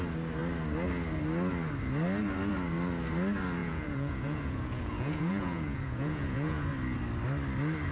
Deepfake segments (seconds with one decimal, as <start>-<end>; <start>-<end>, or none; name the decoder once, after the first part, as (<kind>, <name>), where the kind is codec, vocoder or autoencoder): 3.6-6.7 (vocoder, Vocos)